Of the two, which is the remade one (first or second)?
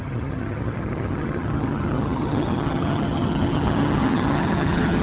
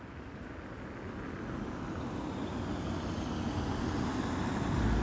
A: first